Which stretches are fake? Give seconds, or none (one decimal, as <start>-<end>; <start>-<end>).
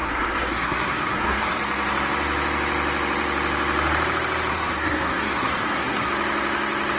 0.0-1.6; 4.5-6.1